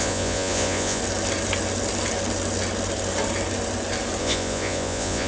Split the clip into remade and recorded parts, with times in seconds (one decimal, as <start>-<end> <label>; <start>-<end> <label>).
0.0-1.0 remade; 1.0-4.2 recorded; 4.2-5.3 remade